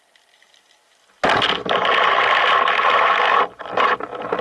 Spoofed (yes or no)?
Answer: no